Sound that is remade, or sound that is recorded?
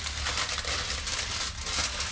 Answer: recorded